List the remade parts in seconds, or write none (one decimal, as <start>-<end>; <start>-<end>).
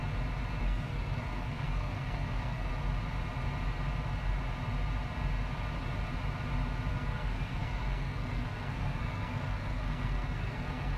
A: 0.6-2.7; 6.9-11.0